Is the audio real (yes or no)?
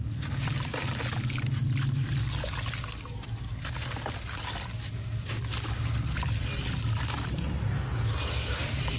yes